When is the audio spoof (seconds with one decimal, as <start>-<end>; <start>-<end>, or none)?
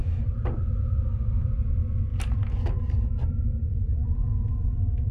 0.0-0.5